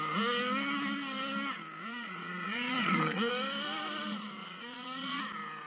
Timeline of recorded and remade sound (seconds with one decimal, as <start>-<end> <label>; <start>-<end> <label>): 0.0-1.9 recorded; 1.9-3.3 remade; 3.3-4.4 recorded; 4.4-5.2 remade; 5.2-5.7 recorded